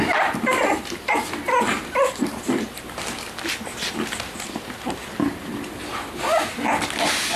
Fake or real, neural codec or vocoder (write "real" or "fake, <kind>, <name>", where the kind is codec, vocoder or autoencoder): real